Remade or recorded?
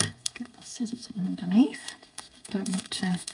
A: remade